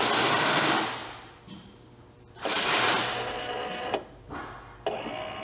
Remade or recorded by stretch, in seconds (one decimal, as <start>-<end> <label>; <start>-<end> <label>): 0.0-1.0 recorded; 1.0-4.2 remade; 4.2-5.4 recorded